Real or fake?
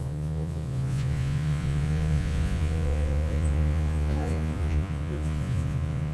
fake